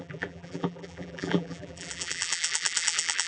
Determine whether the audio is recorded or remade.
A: remade